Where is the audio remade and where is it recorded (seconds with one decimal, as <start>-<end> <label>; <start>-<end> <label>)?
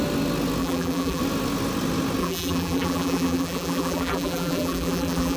0.0-0.6 recorded; 0.6-1.2 remade; 1.2-2.2 recorded; 2.2-5.4 remade